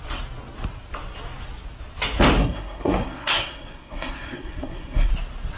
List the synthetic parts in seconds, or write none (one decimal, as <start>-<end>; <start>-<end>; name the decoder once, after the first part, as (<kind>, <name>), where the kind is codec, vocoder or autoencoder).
2.4-5.1 (codec, SNAC)